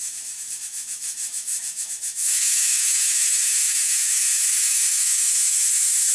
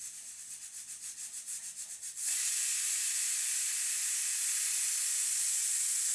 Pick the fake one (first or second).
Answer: first